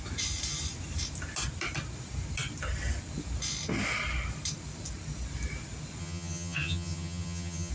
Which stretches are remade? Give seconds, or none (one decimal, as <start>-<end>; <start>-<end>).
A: 6.0-7.7

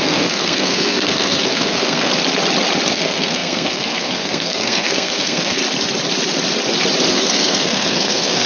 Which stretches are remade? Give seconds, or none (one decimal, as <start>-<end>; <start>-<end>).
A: 0.0-2.1; 2.9-5.6; 7.1-8.5

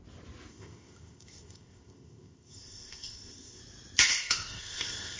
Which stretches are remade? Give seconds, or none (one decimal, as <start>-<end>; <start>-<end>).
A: 0.5-3.6; 4.1-5.2

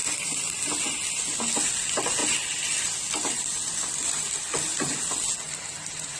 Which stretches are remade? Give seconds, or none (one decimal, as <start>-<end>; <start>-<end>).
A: none

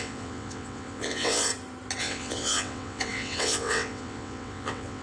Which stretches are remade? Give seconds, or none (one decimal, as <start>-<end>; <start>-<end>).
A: 0.0-1.5; 2.0-5.0

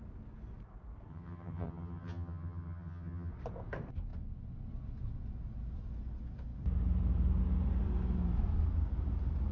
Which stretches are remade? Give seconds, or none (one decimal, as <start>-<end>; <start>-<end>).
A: 1.1-3.3